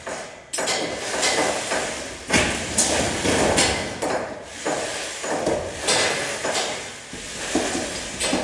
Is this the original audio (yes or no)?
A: yes